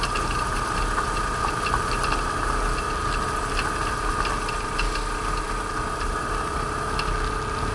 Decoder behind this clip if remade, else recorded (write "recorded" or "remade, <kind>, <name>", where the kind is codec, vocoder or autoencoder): recorded